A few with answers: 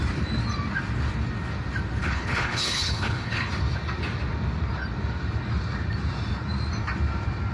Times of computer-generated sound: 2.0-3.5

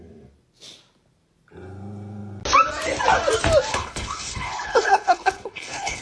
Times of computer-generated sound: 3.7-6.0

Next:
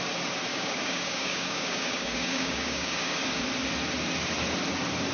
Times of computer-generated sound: 0.5-3.4